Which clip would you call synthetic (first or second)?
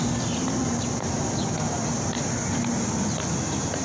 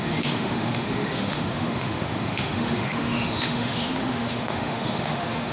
second